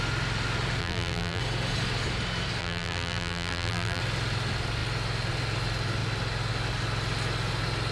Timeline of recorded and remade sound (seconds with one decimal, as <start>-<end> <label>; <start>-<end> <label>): 0.0-0.8 recorded; 0.8-1.4 remade; 1.4-2.6 recorded; 2.6-4.0 remade; 4.0-7.9 recorded